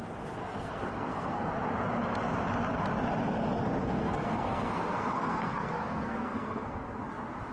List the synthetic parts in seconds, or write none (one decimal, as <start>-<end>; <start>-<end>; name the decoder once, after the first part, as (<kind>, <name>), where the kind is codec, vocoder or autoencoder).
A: 0.4-1.5 (codec, SNAC); 3.8-7.0